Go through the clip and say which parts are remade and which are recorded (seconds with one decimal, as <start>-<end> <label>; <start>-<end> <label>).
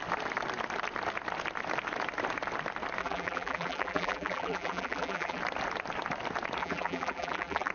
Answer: 0.0-3.0 recorded; 3.0-5.4 remade; 5.4-6.6 recorded; 6.6-7.7 remade